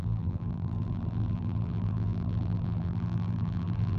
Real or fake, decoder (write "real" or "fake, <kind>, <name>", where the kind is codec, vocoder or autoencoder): fake, vocoder, BigVGAN v2